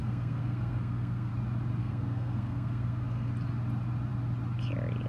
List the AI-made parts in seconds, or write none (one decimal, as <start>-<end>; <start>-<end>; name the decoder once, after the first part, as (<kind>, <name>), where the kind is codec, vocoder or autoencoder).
0.0-1.3 (codec, SNAC); 1.8-3.3